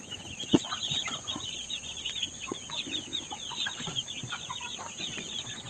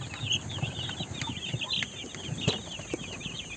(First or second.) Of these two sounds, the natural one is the second